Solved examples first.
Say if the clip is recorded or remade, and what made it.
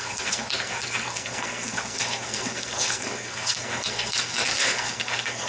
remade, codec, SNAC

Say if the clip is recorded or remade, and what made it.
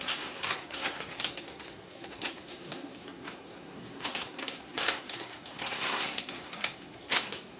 remade, codec, SNAC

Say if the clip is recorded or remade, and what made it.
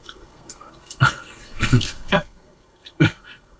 remade, codec, SNAC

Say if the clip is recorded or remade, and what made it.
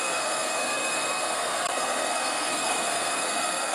remade, codec, SNAC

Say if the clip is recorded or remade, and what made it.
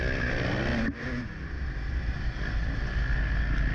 recorded